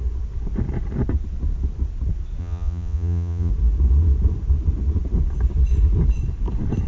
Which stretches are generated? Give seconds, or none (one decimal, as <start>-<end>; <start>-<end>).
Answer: 2.4-3.5